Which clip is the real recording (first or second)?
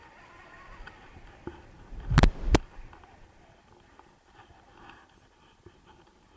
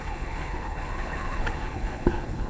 first